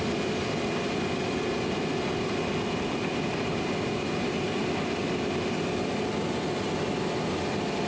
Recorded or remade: recorded